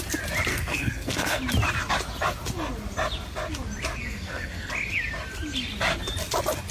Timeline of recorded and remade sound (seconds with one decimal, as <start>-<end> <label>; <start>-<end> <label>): 0.0-0.5 recorded; 0.5-1.4 remade; 1.4-4.0 recorded; 4.0-4.7 remade; 4.7-6.7 recorded

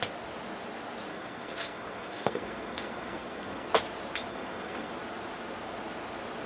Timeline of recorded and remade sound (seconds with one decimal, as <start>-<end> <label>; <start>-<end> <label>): 0.0-1.1 recorded; 1.1-3.7 remade; 3.7-4.3 recorded; 4.3-4.9 remade; 4.9-6.5 recorded

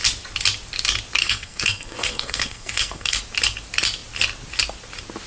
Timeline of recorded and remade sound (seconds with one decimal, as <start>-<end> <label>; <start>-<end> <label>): 0.0-1.2 recorded; 1.2-3.2 remade; 3.2-5.3 recorded

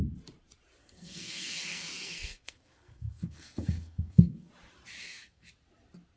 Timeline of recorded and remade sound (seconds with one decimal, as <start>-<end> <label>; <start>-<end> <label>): 0.0-0.8 recorded; 0.8-4.5 remade; 4.5-5.0 recorded; 5.0-5.5 remade; 5.5-6.2 recorded

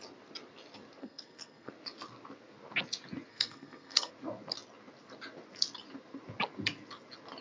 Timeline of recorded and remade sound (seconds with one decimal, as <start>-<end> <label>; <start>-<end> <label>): 0.0-1.0 recorded; 1.0-1.7 remade; 1.7-3.3 recorded; 3.3-4.1 remade; 4.1-7.4 recorded

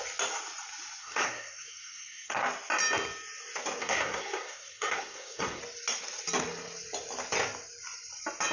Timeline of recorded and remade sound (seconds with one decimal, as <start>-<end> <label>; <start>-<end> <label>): 0.0-1.0 recorded; 1.0-2.4 remade; 2.4-3.8 recorded; 3.8-5.6 remade; 5.6-8.5 recorded

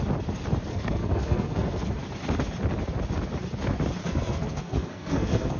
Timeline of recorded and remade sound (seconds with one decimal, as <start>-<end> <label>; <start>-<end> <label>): 0.0-0.7 recorded; 0.7-1.9 remade; 1.9-4.0 recorded; 4.0-5.6 remade